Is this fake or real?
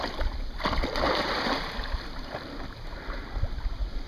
real